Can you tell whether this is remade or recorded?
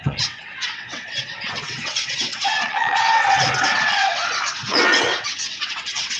remade